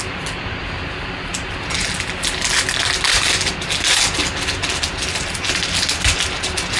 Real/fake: real